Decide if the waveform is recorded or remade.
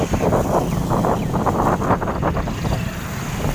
recorded